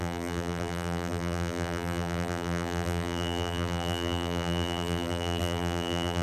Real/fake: fake